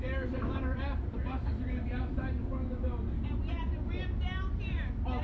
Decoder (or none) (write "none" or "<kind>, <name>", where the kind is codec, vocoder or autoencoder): none